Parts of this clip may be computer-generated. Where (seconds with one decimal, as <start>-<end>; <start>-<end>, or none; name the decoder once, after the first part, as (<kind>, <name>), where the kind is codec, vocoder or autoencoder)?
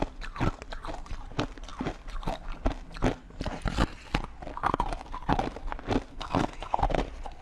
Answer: 6.1-6.8 (codec, SNAC)